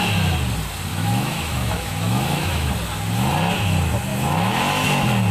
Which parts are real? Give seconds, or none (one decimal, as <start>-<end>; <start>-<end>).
0.0-0.9; 2.7-4.1; 4.6-5.3

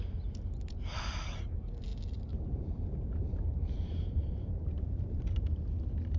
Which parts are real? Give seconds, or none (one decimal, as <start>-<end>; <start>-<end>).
0.0-1.9; 5.6-6.2

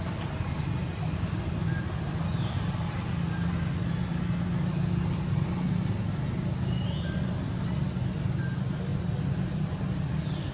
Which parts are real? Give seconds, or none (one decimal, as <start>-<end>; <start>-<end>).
0.0-10.5